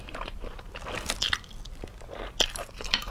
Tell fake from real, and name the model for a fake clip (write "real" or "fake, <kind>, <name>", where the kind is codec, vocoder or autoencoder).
real